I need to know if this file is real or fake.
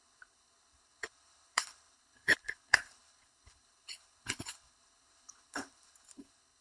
fake